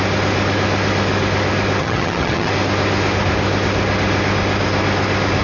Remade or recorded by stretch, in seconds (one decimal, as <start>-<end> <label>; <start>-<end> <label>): 0.0-1.8 recorded; 1.8-2.5 remade; 2.5-5.4 recorded